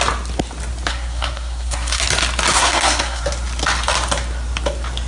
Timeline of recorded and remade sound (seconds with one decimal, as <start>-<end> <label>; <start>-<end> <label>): 0.0-0.9 recorded; 0.9-2.0 remade; 2.0-2.5 recorded; 2.5-3.2 remade; 3.2-5.1 recorded